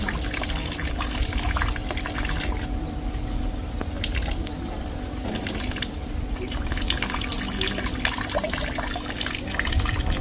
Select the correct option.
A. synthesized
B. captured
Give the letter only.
B